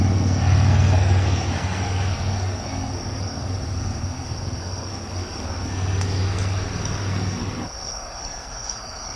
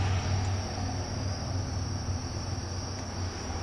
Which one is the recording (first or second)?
second